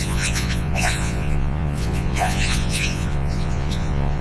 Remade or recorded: remade